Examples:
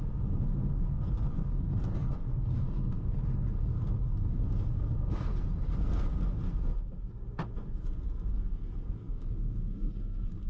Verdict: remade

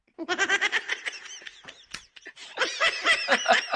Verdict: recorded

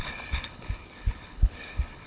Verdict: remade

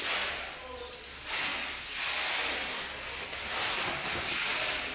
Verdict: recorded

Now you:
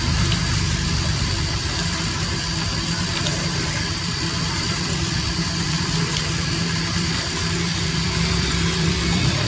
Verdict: remade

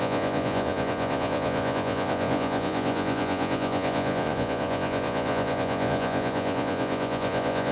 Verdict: remade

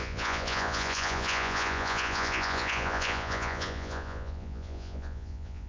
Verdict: remade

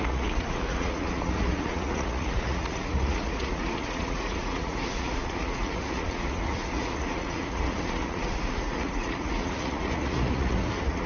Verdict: remade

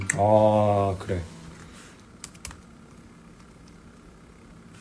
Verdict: recorded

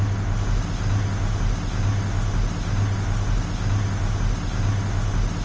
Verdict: recorded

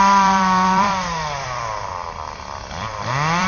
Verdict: remade